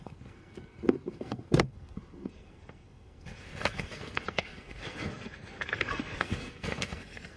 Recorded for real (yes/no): no